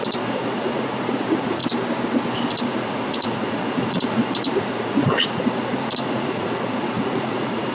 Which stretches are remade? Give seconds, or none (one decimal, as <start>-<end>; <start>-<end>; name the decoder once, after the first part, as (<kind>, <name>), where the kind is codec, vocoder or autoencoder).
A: 0.0-1.6 (vocoder, Vocos); 2.5-7.7